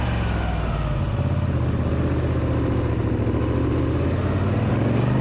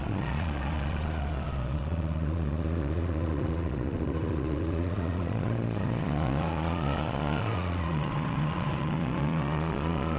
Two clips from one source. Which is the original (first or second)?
first